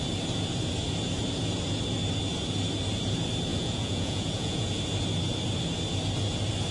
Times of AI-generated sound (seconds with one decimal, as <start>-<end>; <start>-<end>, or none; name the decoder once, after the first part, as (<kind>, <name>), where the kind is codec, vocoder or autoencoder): 3.5-4.8 (vocoder, Vocos)